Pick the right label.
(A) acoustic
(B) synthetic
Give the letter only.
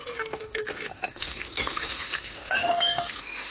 B